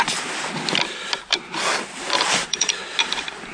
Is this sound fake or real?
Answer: fake